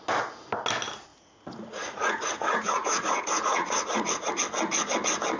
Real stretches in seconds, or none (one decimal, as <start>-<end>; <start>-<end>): 0.0-1.1; 4.3-5.4